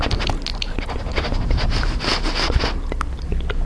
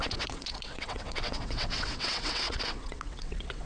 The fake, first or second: second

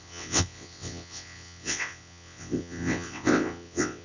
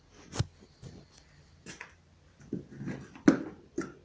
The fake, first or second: first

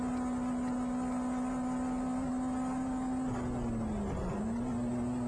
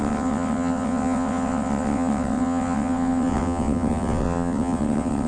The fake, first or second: second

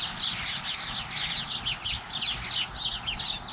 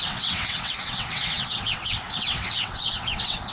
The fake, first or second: second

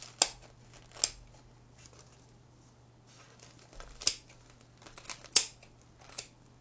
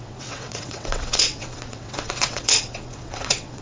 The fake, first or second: second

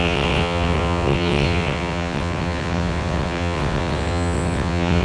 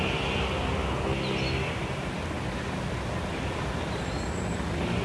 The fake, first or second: first